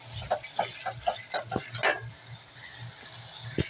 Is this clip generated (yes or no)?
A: no